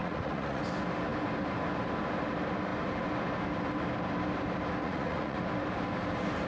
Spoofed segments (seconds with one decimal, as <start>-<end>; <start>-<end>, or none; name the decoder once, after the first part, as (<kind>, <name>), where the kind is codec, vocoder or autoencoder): 0.0-0.6 (vocoder, Vocos); 4.8-5.4